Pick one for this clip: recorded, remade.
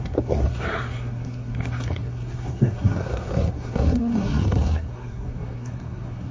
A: remade